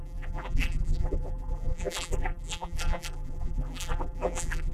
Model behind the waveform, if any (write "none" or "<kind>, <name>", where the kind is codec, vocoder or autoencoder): vocoder, BigVGAN v2